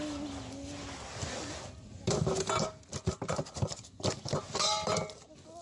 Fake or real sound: real